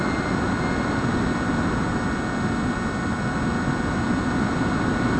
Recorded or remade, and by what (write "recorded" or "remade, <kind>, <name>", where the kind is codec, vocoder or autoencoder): recorded